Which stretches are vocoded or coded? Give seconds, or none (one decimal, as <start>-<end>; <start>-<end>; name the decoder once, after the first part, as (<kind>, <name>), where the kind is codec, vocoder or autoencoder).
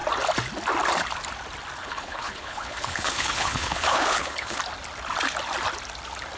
1.8-4.6 (codec, HILCodec)